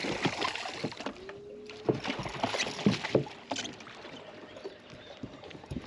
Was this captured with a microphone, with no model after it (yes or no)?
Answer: yes